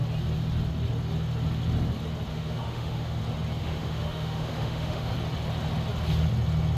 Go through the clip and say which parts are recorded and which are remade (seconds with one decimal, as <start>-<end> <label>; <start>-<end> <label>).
0.0-2.3 recorded; 2.3-3.2 remade; 3.2-3.6 recorded; 3.6-5.1 remade; 5.1-6.8 recorded